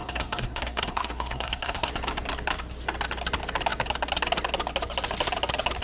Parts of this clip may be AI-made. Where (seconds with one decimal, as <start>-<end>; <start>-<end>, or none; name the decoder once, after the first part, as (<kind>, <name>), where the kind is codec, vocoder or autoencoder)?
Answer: 0.0-1.9 (codec, SNAC)

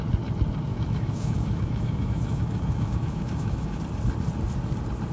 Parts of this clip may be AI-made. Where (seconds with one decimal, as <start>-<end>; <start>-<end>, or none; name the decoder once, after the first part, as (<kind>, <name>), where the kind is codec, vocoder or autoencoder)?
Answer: 0.7-3.8 (autoencoder, DAC-VAE)

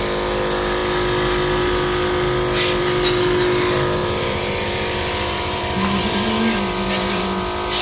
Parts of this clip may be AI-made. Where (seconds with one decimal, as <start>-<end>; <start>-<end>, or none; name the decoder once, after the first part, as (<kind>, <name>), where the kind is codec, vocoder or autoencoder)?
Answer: 4.0-5.6 (vocoder, BigVGAN v2)